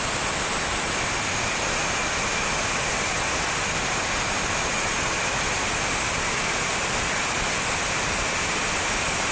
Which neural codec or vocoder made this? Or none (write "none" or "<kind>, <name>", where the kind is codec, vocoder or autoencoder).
none